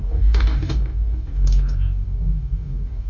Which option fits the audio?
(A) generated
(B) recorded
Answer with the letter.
A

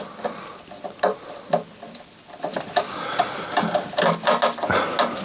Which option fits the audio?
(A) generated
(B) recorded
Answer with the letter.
B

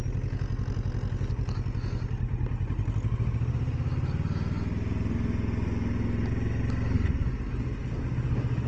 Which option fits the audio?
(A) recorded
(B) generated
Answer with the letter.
A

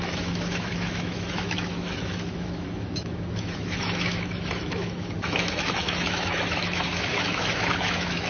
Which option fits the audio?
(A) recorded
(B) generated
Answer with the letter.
B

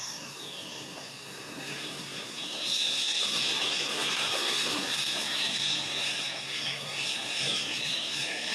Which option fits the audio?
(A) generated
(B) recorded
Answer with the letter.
A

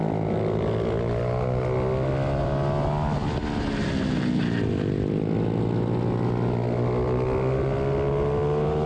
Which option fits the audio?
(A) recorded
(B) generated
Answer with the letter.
A